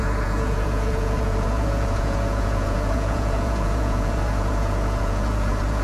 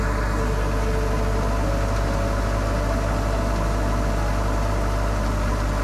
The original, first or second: second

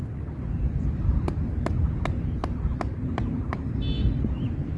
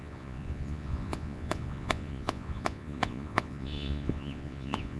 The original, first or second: first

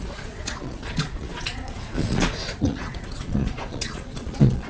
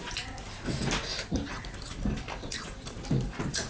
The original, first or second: second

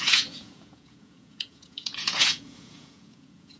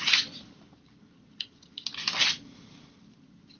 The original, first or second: second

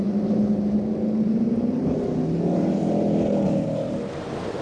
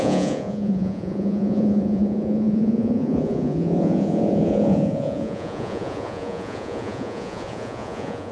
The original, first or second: first